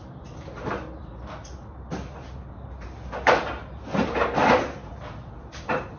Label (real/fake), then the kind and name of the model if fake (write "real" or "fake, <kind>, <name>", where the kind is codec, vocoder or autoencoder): real